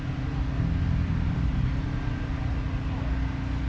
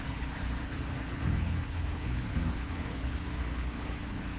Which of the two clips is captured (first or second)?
first